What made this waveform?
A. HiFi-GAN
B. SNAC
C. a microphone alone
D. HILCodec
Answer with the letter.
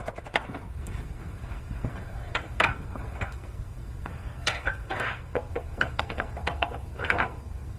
B